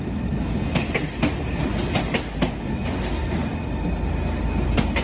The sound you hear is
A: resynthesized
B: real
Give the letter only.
B